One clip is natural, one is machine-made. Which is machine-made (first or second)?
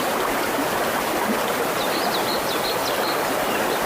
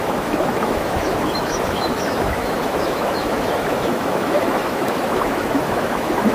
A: second